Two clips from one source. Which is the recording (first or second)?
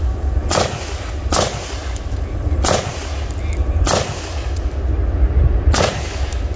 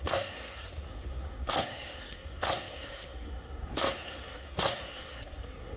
first